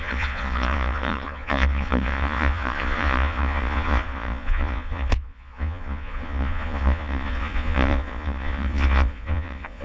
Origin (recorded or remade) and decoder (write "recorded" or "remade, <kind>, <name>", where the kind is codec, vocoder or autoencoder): remade, vocoder, Vocos